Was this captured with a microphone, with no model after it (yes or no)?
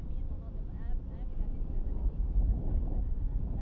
yes